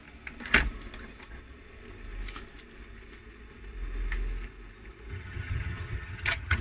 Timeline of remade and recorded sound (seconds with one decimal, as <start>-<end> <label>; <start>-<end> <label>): 0.0-5.1 recorded; 5.1-6.6 remade